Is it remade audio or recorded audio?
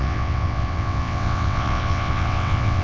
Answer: remade